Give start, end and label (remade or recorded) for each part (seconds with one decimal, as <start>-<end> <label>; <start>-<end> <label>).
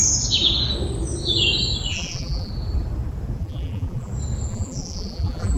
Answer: 0.0-1.9 recorded; 1.9-2.5 remade; 2.5-3.4 recorded; 3.4-4.1 remade; 4.1-4.5 recorded; 4.5-5.6 remade